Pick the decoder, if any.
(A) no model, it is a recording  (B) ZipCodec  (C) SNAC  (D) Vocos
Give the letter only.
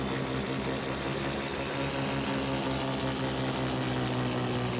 A